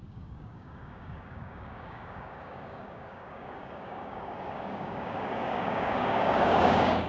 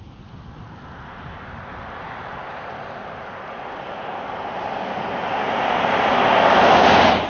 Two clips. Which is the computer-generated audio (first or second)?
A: first